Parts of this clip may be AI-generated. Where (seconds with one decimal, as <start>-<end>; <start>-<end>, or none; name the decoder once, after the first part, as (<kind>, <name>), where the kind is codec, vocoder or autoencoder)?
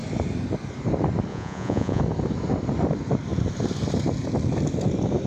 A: 1.3-2.0 (vocoder, Vocos)